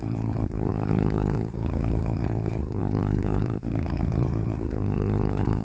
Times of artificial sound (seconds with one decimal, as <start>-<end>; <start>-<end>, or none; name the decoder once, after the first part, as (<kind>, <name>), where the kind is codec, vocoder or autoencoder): 0.0-5.6 (codec, SNAC)

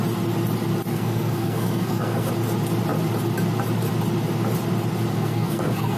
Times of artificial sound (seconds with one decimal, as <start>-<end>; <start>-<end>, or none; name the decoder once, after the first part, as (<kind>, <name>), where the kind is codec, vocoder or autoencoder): 0.9-2.3 (codec, SNAC); 5.1-6.0

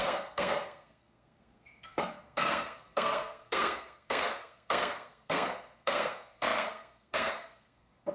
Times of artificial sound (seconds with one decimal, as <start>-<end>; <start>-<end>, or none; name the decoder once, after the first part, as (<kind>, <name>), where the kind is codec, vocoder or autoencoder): 0.0-8.1 (codec, SNAC)

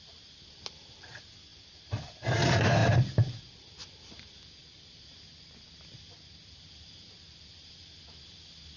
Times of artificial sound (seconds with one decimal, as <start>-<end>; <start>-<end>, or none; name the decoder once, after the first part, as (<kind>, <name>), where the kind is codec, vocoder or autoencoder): none

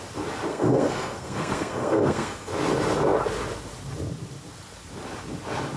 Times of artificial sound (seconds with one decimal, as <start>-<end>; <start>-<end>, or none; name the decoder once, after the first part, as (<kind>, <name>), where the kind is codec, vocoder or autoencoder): 0.5-2.5 (codec, SNAC)

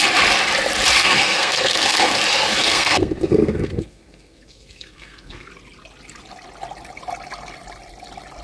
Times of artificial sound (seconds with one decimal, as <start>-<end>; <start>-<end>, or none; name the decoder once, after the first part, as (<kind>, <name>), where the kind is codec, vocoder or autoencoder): 1.0-2.2 (codec, SNAC); 2.6-5.5